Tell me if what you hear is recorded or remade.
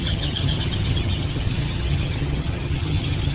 remade